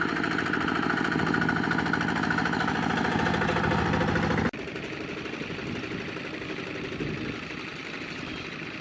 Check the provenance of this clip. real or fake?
real